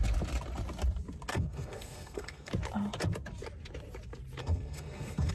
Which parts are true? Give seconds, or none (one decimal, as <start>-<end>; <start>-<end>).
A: 0.0-1.3; 2.5-4.4